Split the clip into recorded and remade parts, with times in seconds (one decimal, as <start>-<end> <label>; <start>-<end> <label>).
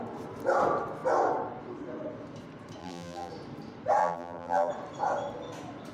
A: 0.0-2.8 recorded; 2.8-3.3 remade; 3.3-4.0 recorded; 4.0-4.7 remade; 4.7-5.9 recorded